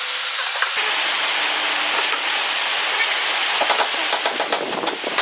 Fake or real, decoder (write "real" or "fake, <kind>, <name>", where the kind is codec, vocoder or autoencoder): real